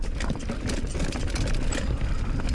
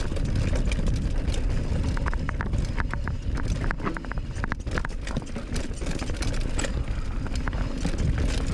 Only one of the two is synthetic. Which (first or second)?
first